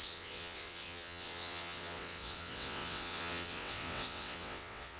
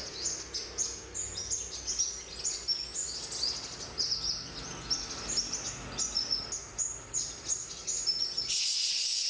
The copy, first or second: first